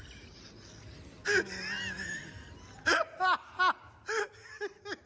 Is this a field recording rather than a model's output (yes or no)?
yes